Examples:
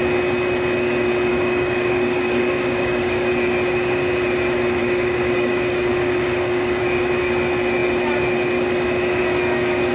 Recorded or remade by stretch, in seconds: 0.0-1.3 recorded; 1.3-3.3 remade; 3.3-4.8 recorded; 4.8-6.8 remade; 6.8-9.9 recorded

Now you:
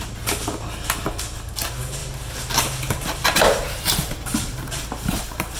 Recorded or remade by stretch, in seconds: 0.0-2.0 recorded; 2.0-5.6 remade

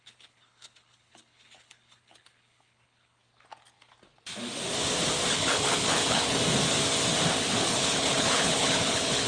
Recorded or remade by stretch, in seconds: 0.0-3.2 remade; 3.2-5.3 recorded; 5.3-6.4 remade; 6.4-7.4 recorded; 7.4-9.3 remade

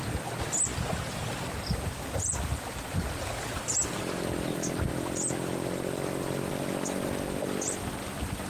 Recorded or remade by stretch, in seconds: 0.0-0.7 recorded; 0.7-4.0 remade; 4.0-4.9 recorded; 4.9-6.5 remade; 6.5-8.5 recorded

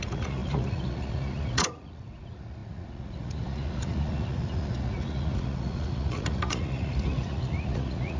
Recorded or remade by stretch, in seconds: 0.0-8.2 remade

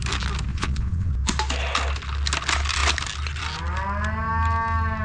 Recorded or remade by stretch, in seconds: 0.0-0.5 recorded; 0.5-1.1 remade; 1.1-5.0 recorded